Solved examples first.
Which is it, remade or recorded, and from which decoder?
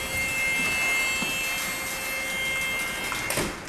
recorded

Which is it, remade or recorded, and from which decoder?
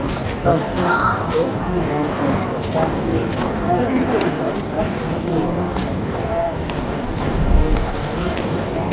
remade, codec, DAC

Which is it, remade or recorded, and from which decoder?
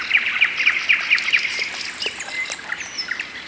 recorded